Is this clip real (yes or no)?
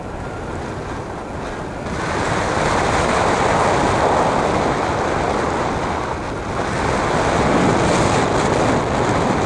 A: yes